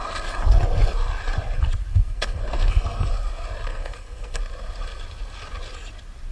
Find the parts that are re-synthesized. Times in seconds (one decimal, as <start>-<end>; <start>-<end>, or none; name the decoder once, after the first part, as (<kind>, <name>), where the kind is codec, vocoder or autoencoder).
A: 1.9-3.1 (codec, SNAC); 3.7-4.4